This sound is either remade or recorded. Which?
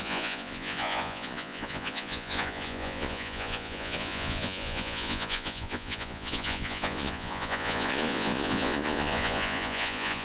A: remade